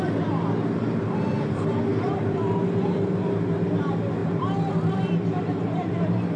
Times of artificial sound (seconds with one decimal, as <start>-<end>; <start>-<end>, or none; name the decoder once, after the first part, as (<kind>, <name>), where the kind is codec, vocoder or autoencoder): 1.9-3.0 (vocoder, BigVGAN v2); 4.2-5.9